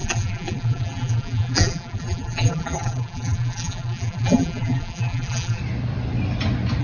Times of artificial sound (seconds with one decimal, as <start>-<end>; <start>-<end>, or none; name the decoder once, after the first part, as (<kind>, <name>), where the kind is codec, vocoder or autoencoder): 0.0-5.6 (vocoder, BigVGAN v2)